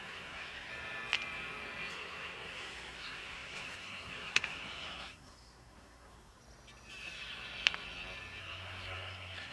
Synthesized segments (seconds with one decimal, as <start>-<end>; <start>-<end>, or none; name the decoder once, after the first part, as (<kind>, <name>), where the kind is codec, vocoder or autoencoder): 0.0-0.7 (codec, SNAC); 1.9-6.4; 8.4-9.5